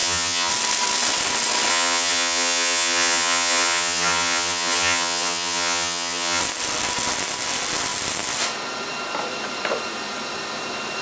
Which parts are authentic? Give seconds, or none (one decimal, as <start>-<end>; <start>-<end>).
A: 0.5-1.7; 6.4-11.0